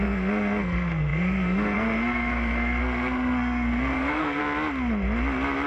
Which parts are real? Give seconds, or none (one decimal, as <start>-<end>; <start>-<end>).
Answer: 4.4-5.7